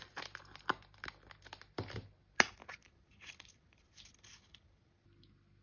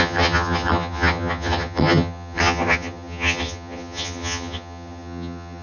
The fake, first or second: second